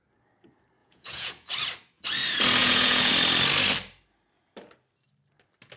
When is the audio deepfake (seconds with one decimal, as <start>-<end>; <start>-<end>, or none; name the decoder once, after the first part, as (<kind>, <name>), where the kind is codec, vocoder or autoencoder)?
0.8-1.5 (vocoder, Vocos); 2.6-3.1